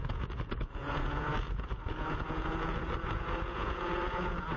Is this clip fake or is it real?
fake